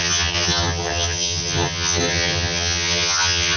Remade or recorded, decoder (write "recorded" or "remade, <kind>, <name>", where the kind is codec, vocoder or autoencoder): remade, vocoder, HiFi-GAN